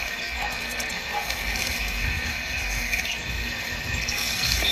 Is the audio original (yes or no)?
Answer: no